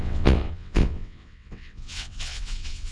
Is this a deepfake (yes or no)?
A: yes